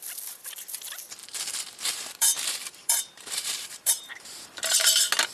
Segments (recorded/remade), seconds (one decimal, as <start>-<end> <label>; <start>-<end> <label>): 0.0-1.2 recorded; 1.2-4.4 remade; 4.4-5.3 recorded